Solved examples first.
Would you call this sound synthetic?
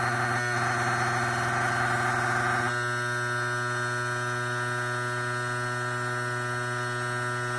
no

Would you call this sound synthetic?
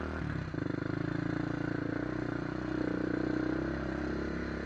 no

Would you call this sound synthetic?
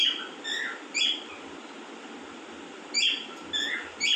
no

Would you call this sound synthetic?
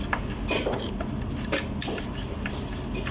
no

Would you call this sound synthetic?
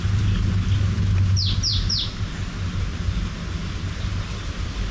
no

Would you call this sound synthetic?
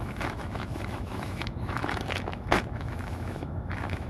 yes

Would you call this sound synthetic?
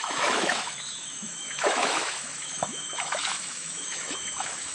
yes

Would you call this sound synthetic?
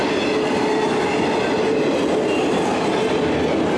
no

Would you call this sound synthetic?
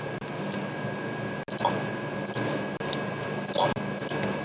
no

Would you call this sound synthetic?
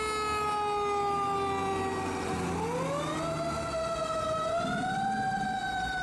no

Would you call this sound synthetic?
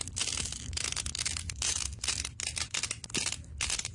no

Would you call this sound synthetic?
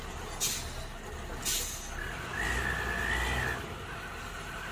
no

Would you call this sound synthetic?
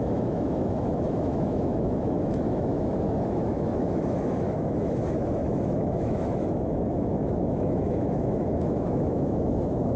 yes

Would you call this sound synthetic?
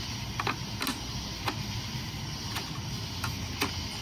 no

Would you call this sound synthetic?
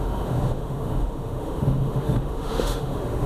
yes